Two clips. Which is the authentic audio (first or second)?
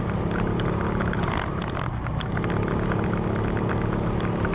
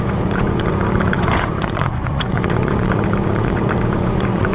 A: first